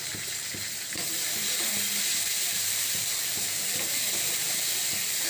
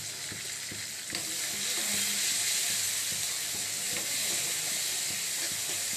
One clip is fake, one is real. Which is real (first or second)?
second